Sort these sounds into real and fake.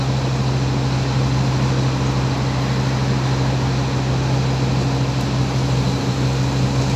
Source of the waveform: real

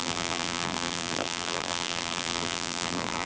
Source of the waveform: fake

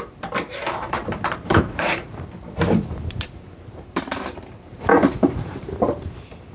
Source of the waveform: fake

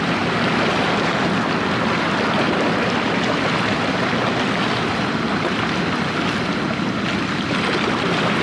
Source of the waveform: real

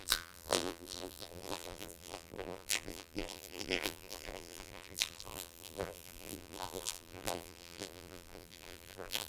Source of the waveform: fake